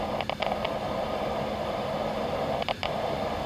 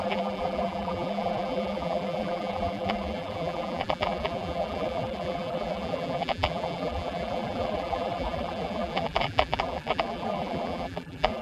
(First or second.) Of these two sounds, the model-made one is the second